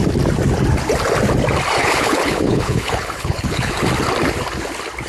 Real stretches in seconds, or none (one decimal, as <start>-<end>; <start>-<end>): 0.0-1.8; 3.7-5.1